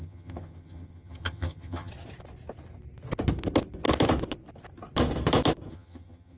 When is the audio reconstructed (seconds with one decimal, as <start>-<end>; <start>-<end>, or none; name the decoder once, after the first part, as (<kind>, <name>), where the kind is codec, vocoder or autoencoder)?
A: 0.0-1.9 (vocoder, HiFi-GAN); 5.7-6.4